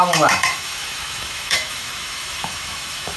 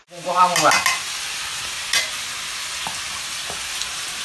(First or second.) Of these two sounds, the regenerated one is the first